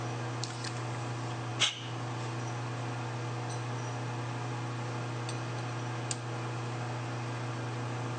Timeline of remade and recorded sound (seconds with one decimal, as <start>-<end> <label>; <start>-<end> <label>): 0.0-8.2 recorded